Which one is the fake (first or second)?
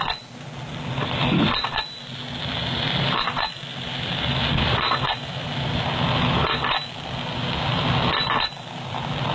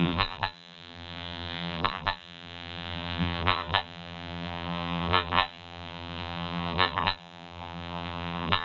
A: second